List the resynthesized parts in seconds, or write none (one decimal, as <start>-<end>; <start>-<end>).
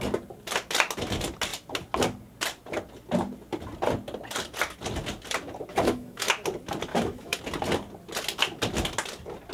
5.7-6.3; 6.9-7.4